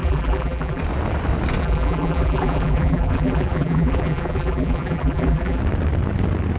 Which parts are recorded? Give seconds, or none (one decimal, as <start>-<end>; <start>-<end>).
0.8-1.6; 5.6-6.6